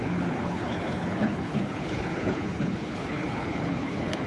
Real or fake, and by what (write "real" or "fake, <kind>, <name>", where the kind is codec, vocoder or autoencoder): fake, codec, HILCodec